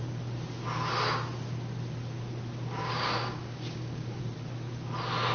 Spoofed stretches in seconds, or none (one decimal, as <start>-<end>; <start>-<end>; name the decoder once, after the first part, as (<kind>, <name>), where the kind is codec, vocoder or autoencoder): 2.8-4.2 (codec, DAC)